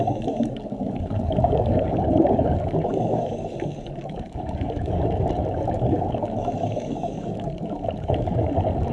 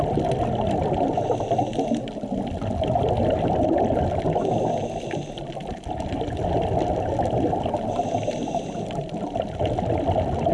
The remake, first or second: first